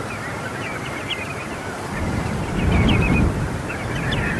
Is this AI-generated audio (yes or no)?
yes